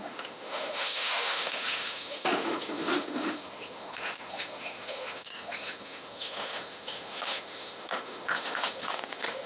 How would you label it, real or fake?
fake